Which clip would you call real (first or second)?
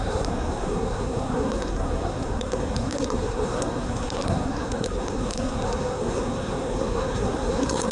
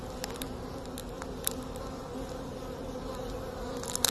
second